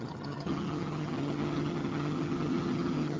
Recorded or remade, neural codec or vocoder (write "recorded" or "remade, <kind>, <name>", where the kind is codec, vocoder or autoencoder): remade, vocoder, HiFi-GAN